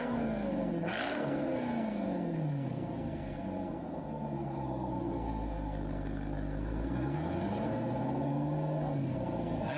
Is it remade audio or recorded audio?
remade